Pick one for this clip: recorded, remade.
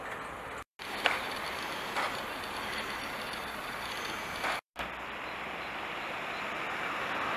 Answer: recorded